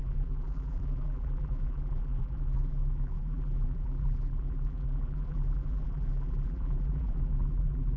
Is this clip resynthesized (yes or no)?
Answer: yes